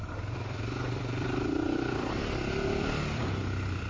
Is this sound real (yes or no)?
no